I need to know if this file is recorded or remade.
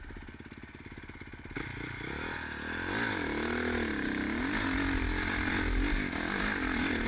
recorded